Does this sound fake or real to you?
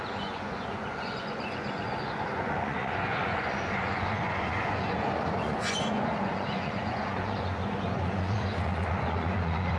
fake